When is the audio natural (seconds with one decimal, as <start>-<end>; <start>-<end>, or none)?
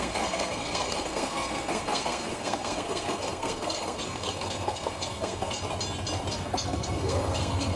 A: 5.6-6.3